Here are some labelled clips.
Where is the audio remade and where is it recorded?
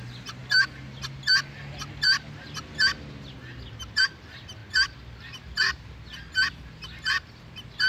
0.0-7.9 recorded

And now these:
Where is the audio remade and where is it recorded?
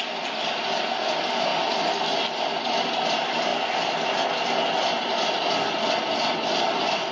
0.0-3.5 remade; 3.5-6.0 recorded; 6.0-7.1 remade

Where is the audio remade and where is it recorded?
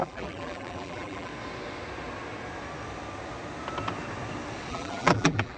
0.0-1.3 remade; 1.3-4.7 recorded; 4.7-5.6 remade